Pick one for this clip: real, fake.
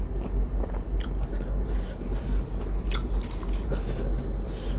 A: real